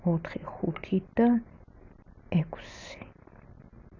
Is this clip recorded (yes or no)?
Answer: yes